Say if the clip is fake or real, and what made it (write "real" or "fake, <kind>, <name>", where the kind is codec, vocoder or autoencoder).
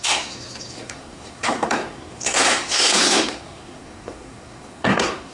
fake, codec, SNAC